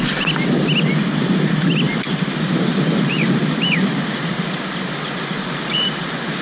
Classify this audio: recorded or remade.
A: recorded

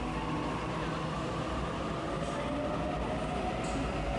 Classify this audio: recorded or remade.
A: recorded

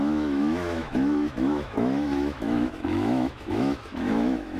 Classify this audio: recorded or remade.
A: remade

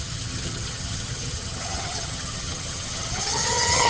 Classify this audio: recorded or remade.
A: remade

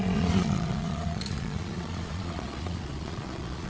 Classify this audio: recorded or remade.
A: remade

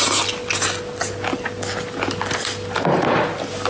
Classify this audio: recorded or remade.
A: recorded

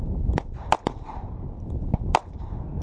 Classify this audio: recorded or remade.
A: remade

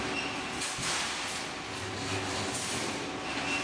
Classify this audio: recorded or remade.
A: recorded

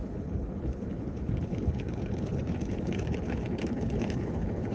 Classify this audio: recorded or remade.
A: remade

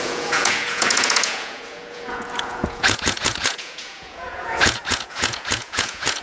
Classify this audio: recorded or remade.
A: remade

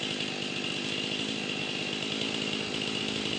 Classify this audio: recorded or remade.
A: recorded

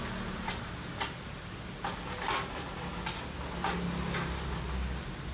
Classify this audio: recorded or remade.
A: remade